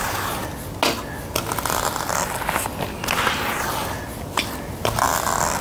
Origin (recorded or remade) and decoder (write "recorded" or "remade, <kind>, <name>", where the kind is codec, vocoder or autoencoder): recorded